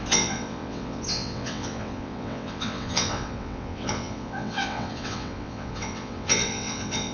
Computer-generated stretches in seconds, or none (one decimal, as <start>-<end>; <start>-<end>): 0.0-7.1